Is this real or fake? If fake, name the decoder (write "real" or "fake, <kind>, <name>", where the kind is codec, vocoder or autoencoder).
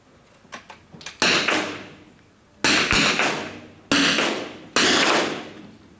real